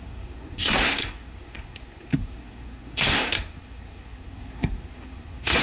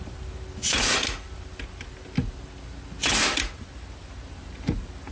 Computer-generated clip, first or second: first